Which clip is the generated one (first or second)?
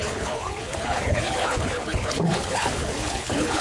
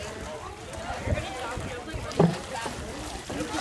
first